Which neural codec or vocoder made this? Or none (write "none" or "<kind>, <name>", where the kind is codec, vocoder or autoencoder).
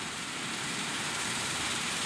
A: vocoder, BigVGAN v2